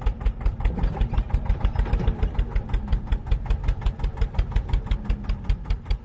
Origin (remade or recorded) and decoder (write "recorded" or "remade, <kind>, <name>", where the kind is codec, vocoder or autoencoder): recorded